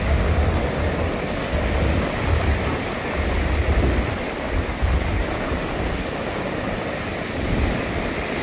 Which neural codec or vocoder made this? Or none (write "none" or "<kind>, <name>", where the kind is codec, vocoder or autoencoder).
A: none